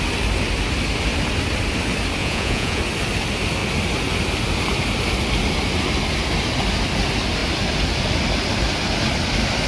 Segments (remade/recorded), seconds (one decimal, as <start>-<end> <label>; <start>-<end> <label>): 0.0-2.2 recorded; 2.2-2.8 remade; 2.8-9.7 recorded